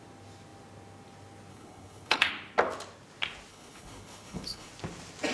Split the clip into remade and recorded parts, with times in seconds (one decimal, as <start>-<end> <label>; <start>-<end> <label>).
0.0-1.5 recorded; 1.5-2.3 remade; 2.3-3.5 recorded; 3.5-4.7 remade; 4.7-5.3 recorded